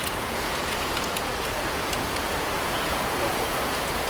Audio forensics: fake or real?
fake